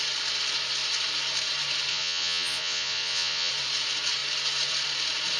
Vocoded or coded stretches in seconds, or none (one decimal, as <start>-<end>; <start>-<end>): 1.9-3.5